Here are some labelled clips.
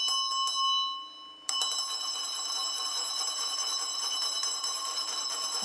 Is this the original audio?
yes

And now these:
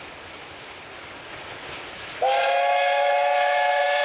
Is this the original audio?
yes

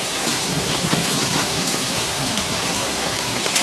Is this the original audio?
no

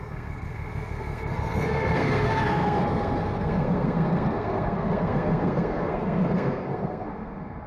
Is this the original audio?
no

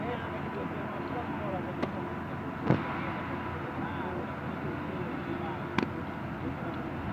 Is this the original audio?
yes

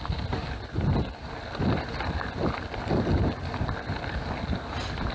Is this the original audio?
yes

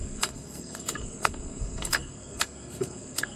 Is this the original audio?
no